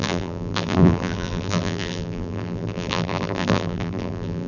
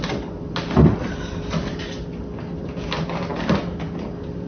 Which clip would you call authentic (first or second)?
second